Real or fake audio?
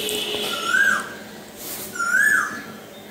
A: real